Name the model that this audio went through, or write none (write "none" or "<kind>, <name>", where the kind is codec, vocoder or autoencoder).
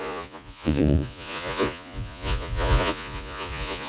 vocoder, Vocos